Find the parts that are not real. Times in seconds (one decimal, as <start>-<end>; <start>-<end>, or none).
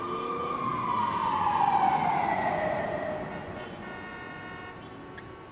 1.2-2.8; 3.4-4.4